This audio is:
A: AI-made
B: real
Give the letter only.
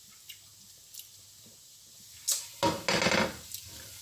B